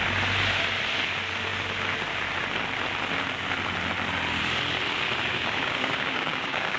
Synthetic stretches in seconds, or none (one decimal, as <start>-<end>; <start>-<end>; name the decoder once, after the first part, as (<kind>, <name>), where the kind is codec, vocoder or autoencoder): 5.3-6.8 (codec, DAC)